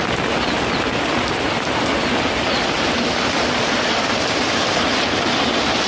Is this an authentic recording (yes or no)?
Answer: yes